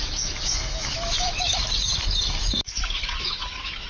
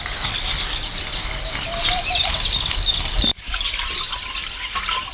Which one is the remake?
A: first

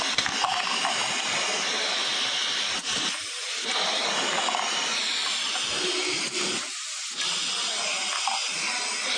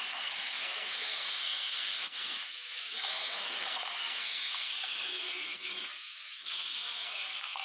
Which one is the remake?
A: second